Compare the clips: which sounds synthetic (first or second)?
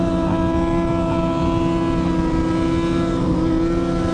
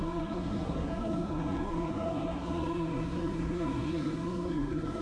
second